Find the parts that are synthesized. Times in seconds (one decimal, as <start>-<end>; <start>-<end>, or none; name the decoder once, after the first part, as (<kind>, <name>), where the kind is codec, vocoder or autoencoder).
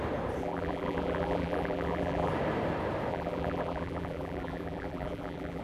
0.4-2.3 (vocoder, BigVGAN v2); 3.1-5.6